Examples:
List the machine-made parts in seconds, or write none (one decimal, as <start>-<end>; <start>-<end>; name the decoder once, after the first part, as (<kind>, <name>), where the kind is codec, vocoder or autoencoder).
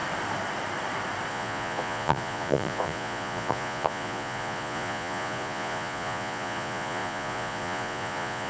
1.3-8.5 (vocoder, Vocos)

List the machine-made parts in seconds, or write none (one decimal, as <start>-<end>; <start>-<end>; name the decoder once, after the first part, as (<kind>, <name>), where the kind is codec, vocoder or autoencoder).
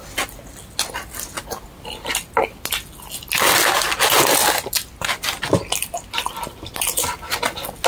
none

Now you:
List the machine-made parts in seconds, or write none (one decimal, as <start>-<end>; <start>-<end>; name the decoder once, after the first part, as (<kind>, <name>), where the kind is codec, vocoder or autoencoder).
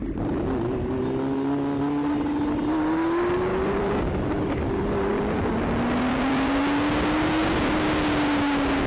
0.0-1.0 (vocoder, BigVGAN v2); 3.5-4.6; 5.1-6.6